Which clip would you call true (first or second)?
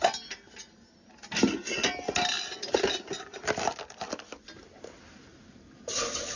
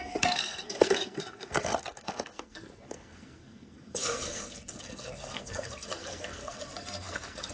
first